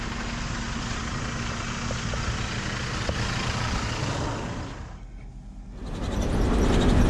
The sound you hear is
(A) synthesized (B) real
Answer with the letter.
B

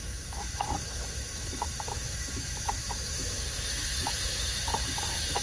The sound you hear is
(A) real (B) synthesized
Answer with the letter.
B